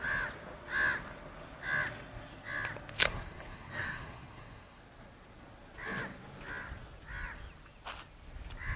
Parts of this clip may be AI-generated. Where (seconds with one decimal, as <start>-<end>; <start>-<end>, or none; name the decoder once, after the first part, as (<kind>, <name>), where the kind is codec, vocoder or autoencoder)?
3.0-4.8 (codec, SNAC)